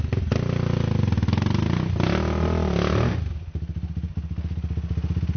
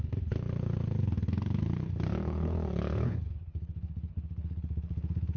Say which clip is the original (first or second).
first